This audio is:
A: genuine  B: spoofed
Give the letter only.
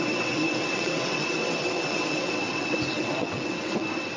B